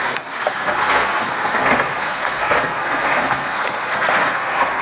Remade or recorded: remade